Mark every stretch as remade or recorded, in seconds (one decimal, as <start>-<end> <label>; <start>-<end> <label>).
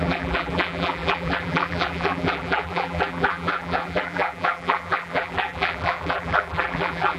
0.0-7.2 remade